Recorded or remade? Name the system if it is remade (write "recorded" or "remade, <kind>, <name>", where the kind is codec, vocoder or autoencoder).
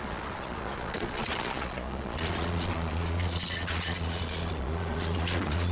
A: remade, vocoder, Vocos